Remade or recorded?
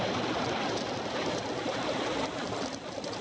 recorded